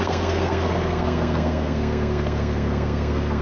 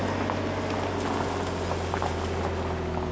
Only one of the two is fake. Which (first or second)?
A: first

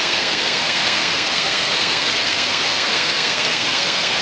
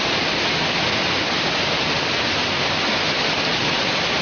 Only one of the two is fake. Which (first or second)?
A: first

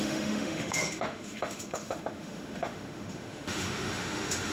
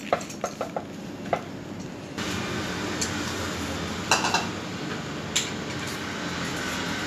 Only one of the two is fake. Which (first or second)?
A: first